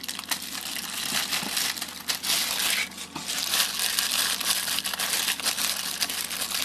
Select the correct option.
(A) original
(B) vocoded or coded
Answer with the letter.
A